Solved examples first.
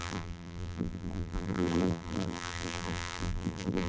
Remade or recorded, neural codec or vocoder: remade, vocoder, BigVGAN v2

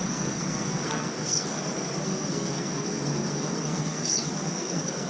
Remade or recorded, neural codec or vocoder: remade, codec, SNAC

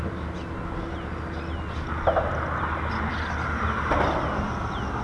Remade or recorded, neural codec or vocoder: recorded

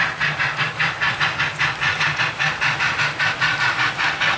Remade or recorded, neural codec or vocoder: recorded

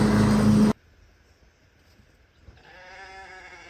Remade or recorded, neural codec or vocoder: recorded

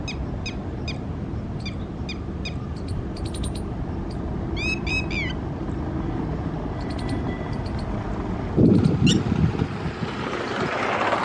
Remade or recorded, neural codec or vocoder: recorded